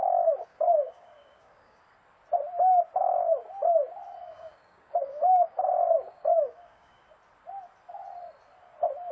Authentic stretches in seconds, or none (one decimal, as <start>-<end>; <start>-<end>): 0.0-0.5; 1.8-4.2; 7.1-9.1